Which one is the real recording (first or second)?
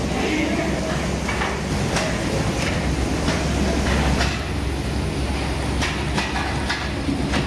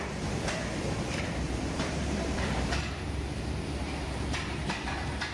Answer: first